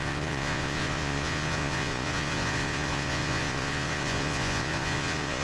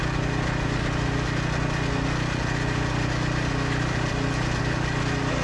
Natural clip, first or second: second